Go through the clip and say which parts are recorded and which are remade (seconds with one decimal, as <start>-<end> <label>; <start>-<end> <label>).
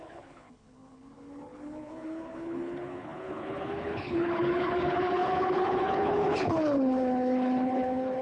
0.0-8.2 remade